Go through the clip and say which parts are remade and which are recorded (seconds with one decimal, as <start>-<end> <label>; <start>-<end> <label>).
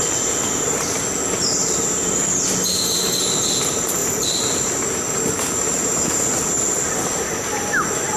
0.0-8.2 recorded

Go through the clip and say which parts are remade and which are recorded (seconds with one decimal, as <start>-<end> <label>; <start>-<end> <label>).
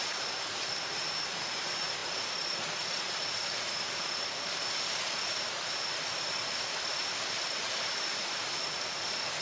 0.0-9.4 recorded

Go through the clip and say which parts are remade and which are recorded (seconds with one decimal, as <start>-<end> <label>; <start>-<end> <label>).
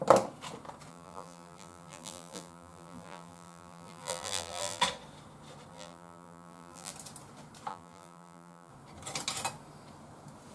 0.0-0.9 recorded; 0.9-4.8 remade; 4.8-5.7 recorded; 5.7-6.9 remade; 6.9-7.7 recorded; 7.7-8.7 remade; 8.7-10.5 recorded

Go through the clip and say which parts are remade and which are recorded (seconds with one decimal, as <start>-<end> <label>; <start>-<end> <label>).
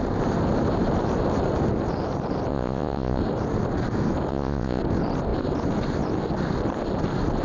0.0-2.5 recorded; 2.5-3.2 remade; 3.2-4.3 recorded; 4.3-4.8 remade; 4.8-7.4 recorded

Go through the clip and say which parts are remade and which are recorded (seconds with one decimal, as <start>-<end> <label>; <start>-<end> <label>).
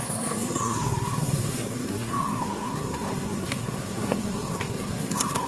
0.0-5.5 remade